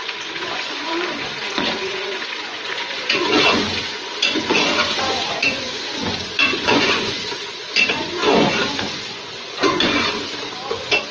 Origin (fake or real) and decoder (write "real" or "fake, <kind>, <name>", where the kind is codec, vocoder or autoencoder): fake, vocoder, Vocos